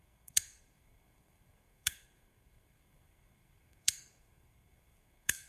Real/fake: fake